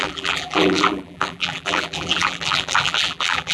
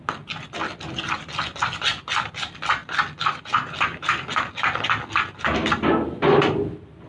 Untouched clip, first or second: second